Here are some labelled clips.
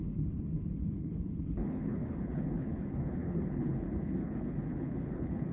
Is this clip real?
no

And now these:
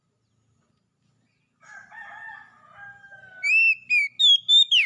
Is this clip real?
yes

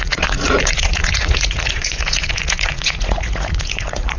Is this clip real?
no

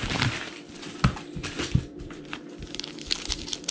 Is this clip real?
yes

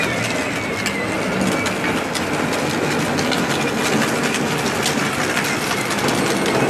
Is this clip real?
yes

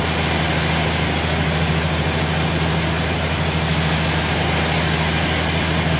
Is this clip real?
yes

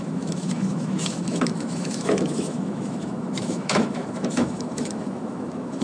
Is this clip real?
no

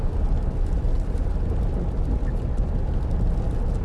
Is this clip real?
yes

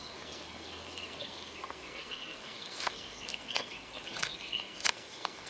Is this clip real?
no